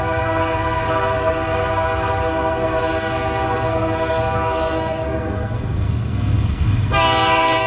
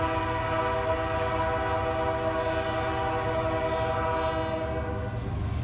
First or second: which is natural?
second